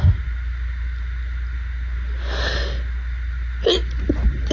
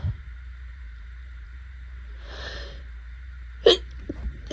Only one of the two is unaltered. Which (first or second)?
first